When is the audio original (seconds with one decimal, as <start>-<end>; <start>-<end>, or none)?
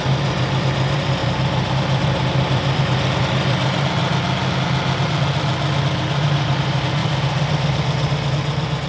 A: 4.0-5.0; 5.5-6.1